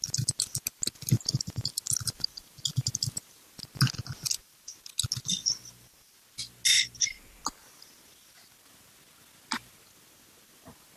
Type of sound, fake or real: real